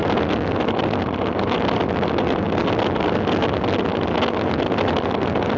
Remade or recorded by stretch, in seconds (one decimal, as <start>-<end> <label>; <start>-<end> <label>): 0.0-5.6 recorded